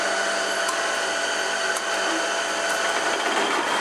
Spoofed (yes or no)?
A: no